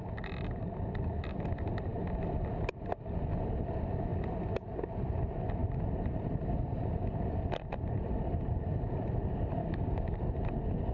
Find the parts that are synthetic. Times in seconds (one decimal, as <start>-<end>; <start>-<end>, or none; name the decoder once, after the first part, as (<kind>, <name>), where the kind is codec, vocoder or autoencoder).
9.6-10.2 (codec, DAC)